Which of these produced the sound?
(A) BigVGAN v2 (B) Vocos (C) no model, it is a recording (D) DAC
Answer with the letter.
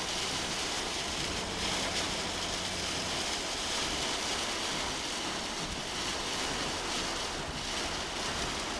C